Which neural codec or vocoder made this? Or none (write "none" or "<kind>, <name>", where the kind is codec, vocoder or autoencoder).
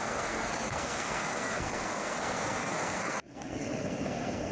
codec, SNAC